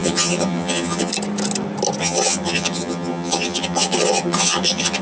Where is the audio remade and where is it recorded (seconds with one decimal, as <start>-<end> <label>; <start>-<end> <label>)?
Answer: 0.0-1.1 remade; 1.1-2.0 recorded; 2.0-5.0 remade